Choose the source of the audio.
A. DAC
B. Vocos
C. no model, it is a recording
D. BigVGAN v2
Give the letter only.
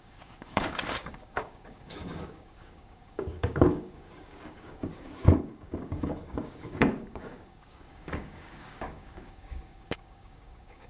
A